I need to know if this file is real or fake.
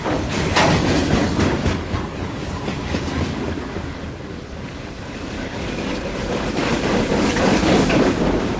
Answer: fake